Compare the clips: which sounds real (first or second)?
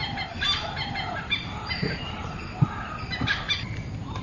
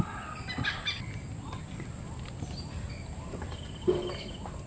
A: second